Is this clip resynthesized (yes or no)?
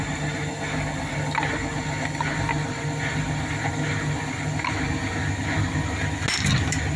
no